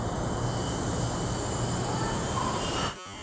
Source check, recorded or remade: recorded